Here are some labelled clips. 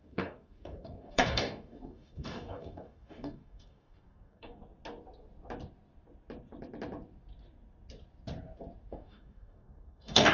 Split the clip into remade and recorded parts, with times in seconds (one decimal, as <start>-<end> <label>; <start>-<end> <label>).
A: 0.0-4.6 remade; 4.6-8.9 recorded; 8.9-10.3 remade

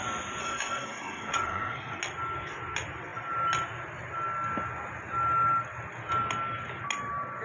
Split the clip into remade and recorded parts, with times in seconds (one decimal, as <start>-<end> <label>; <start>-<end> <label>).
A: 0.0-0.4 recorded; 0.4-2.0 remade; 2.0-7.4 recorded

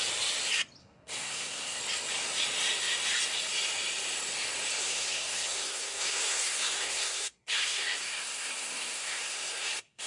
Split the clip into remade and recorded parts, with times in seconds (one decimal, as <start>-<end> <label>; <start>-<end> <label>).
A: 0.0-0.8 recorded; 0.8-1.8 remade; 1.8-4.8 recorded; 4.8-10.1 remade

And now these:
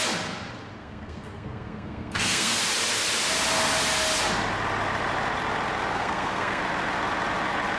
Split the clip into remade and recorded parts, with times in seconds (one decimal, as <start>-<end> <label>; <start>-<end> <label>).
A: 0.0-0.8 recorded; 0.8-2.6 remade; 2.6-5.9 recorded; 5.9-6.6 remade; 6.6-7.8 recorded